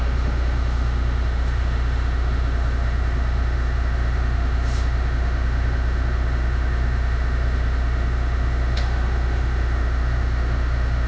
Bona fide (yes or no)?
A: no